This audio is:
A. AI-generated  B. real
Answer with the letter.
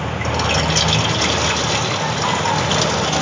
B